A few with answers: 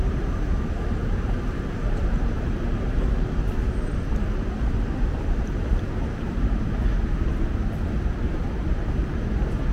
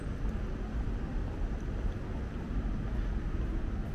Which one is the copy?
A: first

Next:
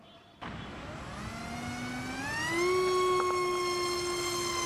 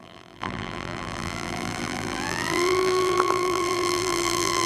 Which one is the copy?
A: second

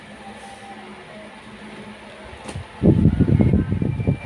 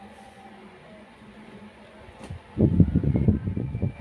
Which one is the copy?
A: second